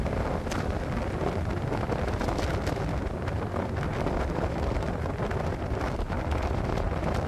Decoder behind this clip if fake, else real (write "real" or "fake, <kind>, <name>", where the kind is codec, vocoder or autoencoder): real